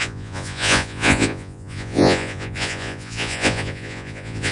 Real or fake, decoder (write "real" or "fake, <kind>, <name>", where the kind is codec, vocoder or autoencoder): fake, vocoder, Vocos